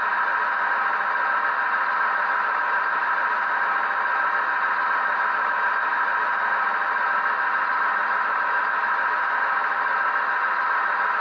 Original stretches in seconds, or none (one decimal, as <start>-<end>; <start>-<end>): 0.0-11.2